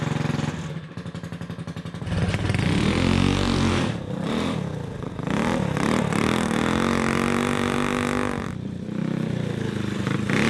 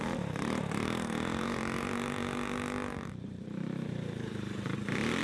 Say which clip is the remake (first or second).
second